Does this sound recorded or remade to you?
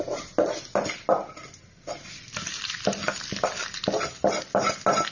recorded